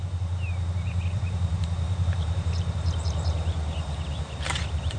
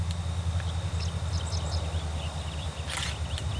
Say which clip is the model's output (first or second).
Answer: first